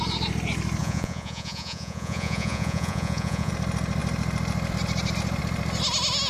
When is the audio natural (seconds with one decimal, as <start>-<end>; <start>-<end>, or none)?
0.0-0.8; 3.5-6.3